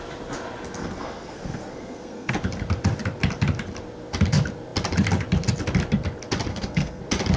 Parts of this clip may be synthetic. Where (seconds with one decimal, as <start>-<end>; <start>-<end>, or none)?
0.8-2.3; 6.5-7.0